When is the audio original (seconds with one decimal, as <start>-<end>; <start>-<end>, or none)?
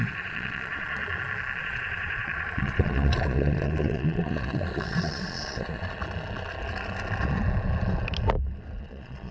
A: 1.0-1.6; 6.0-8.8